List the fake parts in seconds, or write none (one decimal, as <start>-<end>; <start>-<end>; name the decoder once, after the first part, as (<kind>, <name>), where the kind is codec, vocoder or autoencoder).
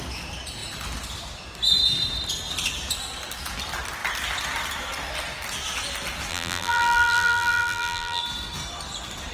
6.3-8.2 (vocoder, BigVGAN v2)